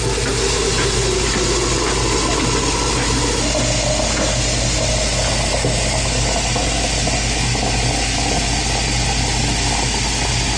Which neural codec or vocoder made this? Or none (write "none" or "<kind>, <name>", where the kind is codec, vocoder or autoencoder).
none